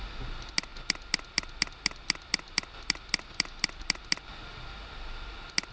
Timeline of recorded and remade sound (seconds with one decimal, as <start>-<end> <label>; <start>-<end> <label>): 0.0-5.7 recorded